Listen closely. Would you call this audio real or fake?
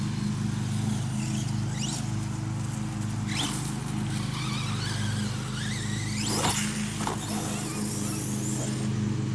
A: real